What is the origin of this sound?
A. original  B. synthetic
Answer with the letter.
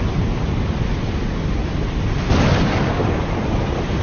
A